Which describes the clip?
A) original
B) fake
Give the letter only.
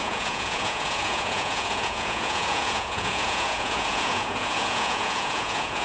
B